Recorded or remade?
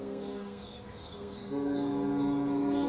remade